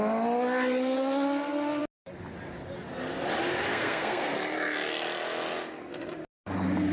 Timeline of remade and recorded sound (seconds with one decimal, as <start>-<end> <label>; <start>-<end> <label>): 0.0-3.7 recorded; 3.7-4.3 remade; 4.3-6.9 recorded